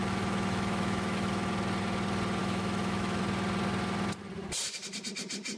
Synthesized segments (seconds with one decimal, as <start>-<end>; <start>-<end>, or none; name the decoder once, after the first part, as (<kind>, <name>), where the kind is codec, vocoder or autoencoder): 0.0-1.5 (autoencoder, DAC-VAE); 2.4-3.2